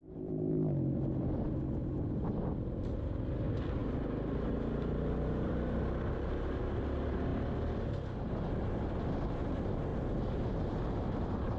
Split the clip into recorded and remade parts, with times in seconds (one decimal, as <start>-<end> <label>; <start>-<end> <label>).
0.0-11.6 recorded